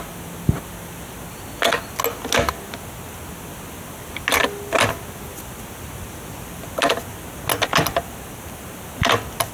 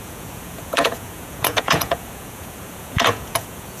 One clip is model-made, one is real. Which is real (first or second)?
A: first